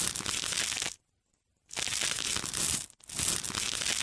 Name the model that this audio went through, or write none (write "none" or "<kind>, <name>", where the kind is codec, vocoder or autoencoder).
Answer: none